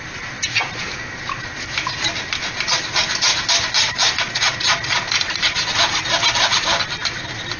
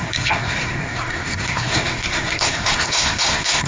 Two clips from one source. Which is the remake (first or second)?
second